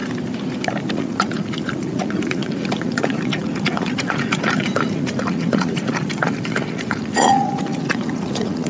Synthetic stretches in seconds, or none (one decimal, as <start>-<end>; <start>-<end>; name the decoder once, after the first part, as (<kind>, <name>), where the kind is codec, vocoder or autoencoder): 0.9-8.7 (vocoder, Vocos)